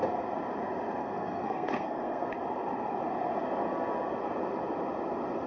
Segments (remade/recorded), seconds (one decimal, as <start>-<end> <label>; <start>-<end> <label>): 0.0-1.0 recorded; 1.0-2.3 remade; 2.3-5.5 recorded